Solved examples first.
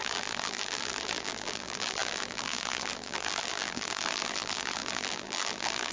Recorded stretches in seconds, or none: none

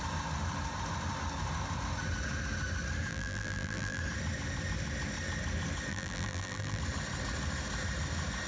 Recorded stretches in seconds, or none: 0.0-3.1; 4.0-5.9; 6.8-8.5